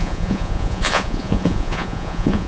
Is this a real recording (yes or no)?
no